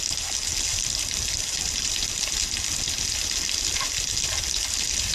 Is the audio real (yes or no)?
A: yes